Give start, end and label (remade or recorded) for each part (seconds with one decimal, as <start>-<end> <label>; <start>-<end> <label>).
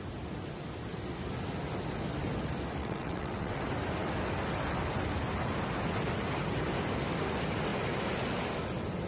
0.0-2.8 recorded; 2.8-3.6 remade; 3.6-9.1 recorded